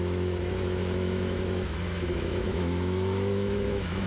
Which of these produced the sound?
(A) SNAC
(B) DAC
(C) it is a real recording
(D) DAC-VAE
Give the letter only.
D